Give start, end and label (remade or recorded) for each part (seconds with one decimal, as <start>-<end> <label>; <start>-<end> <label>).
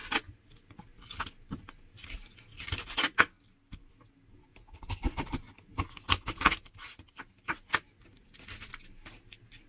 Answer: 0.0-9.7 recorded